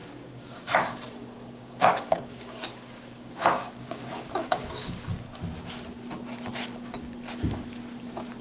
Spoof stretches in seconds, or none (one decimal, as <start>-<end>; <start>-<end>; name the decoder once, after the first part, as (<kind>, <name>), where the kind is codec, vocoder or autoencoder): 0.0-5.0 (codec, DAC)